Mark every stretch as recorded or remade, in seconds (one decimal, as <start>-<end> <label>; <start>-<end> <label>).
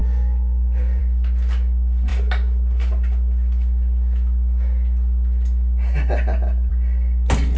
0.0-1.0 remade; 1.0-7.6 recorded